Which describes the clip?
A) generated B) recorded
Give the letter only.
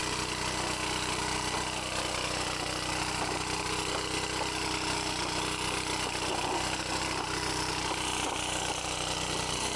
B